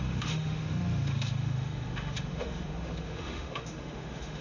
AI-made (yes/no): yes